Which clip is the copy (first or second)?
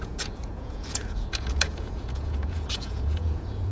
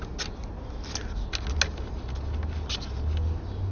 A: first